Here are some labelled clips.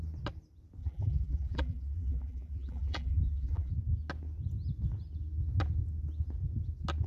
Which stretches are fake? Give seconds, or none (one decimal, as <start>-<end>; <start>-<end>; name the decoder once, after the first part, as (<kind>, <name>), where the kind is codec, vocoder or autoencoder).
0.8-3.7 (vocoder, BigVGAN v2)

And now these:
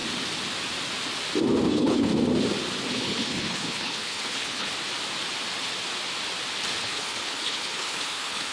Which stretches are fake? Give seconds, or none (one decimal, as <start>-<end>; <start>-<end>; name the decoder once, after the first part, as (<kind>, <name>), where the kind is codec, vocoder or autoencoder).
1.7-2.1 (codec, HILCodec); 2.9-4.7; 6.8-8.5

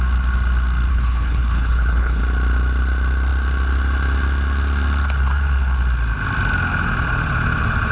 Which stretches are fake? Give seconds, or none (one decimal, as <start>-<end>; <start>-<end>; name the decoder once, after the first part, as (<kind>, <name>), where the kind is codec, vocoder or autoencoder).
0.9-2.2 (codec, HILCodec)

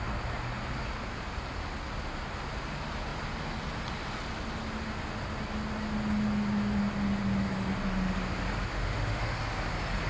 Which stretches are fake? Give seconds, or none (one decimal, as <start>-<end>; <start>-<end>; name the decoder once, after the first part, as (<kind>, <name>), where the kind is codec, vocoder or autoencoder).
8.7-9.4 (autoencoder, DAC-VAE)

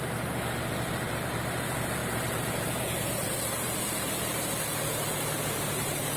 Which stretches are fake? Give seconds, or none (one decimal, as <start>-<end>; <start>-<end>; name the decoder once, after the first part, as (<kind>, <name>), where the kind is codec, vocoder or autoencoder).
0.0-6.2 (vocoder, BigVGAN v2)

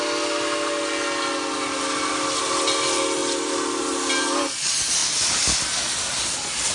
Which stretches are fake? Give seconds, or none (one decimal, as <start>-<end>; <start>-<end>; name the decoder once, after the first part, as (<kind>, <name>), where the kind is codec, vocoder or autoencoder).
none

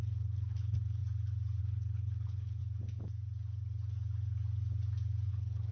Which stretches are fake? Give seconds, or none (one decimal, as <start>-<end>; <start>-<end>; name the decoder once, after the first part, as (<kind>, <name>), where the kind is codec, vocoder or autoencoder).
0.0-1.0 (codec, HILCodec); 1.6-2.6; 5.3-5.7